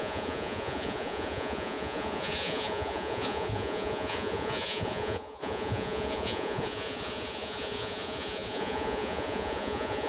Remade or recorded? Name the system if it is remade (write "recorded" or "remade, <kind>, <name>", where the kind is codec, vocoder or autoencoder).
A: remade, vocoder, Vocos